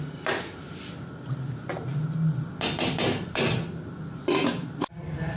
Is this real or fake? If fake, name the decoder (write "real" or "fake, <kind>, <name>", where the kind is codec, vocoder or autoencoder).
real